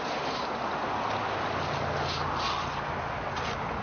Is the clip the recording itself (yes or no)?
yes